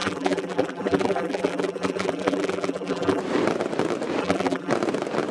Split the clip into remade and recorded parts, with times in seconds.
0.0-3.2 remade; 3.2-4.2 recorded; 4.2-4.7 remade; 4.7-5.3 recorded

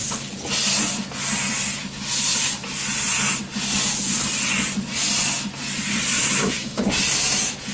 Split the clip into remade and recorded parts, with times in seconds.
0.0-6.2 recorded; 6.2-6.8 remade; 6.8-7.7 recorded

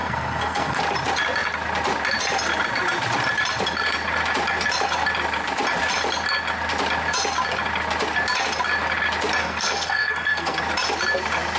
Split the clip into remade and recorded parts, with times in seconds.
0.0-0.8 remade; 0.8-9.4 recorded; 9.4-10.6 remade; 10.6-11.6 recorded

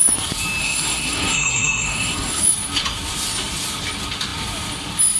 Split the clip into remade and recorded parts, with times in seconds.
0.0-0.6 recorded; 0.6-2.4 remade; 2.4-5.2 recorded

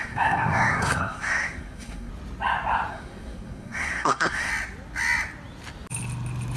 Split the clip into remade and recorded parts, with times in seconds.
0.0-2.1 remade; 2.1-2.9 recorded; 2.9-4.5 remade; 4.5-6.6 recorded

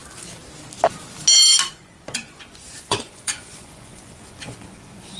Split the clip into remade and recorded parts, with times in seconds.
0.0-1.7 recorded; 1.7-5.2 remade